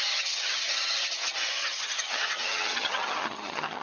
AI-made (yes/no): yes